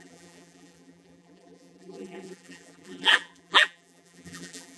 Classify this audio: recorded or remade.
remade